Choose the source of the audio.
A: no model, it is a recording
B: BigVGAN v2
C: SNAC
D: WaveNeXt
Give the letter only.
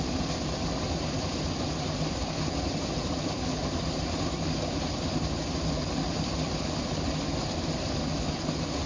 A